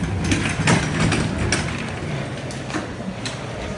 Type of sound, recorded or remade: recorded